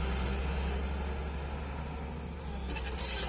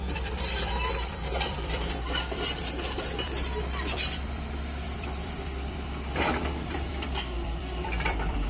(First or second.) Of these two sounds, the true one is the first